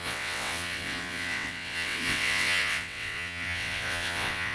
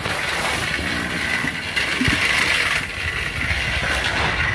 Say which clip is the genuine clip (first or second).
second